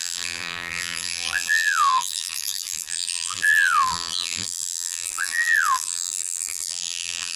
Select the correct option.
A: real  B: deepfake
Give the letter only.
B